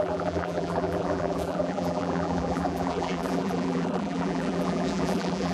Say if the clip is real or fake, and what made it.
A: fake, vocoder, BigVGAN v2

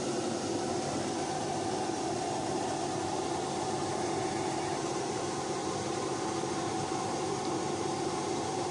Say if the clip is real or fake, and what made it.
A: fake, vocoder, BigVGAN v2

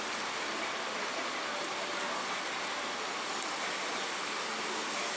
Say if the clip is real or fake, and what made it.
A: real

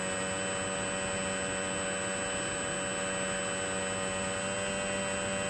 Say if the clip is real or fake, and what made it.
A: real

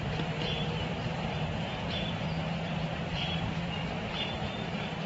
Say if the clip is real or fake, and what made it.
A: fake, vocoder, BigVGAN v2